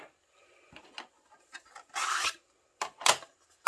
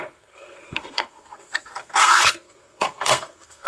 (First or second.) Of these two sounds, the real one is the first